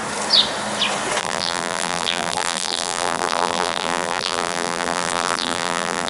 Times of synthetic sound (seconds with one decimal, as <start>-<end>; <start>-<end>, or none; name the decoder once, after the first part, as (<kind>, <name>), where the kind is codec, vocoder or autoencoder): 1.2-6.1 (vocoder, BigVGAN v2)

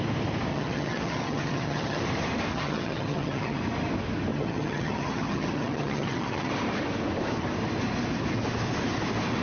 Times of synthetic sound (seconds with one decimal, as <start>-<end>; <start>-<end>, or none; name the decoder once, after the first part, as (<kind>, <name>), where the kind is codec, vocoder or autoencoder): 0.5-2.0 (vocoder, HiFi-GAN); 2.5-3.6; 4.3-6.5

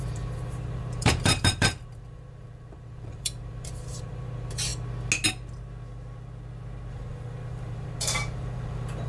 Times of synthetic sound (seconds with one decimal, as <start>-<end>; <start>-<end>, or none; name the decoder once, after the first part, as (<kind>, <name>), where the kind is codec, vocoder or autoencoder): 0.0-4.7 (vocoder, BigVGAN v2); 6.9-9.1